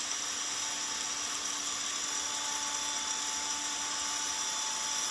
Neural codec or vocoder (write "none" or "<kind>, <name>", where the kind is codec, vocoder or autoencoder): none